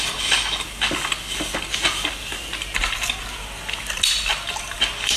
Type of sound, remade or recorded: recorded